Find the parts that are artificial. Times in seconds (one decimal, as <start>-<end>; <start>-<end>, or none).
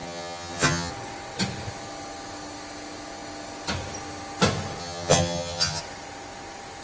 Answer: 0.0-0.9; 4.8-5.8